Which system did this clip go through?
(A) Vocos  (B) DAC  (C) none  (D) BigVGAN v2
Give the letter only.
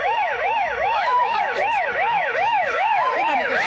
B